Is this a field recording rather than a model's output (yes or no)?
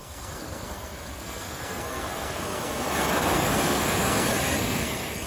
no